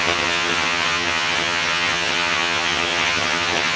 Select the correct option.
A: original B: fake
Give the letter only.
B